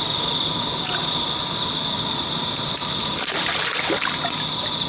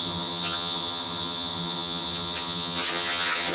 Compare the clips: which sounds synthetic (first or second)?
second